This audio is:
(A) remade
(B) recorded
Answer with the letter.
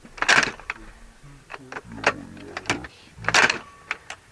B